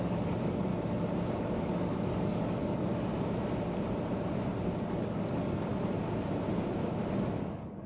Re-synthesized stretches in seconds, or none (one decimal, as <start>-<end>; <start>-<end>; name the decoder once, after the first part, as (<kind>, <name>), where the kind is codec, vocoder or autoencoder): 0.0-0.7 (codec, DAC); 1.4-2.9; 4.8-5.7; 7.4-7.9